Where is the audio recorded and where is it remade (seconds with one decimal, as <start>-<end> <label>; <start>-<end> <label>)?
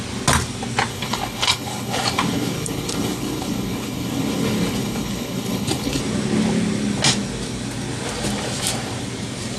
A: 0.0-0.9 recorded; 0.9-6.0 remade; 6.0-9.6 recorded